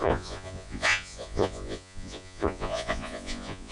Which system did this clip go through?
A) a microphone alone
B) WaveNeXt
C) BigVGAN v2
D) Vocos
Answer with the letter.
D